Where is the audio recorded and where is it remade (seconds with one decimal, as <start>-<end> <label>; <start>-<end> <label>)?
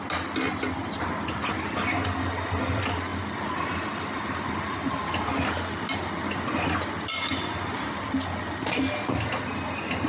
0.0-10.1 recorded